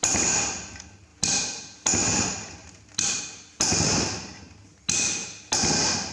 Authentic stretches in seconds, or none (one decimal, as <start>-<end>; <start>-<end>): 0.0-1.1; 1.9-2.6; 3.2-6.1